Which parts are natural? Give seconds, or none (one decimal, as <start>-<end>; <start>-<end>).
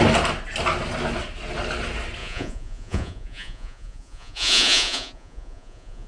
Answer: 0.0-2.2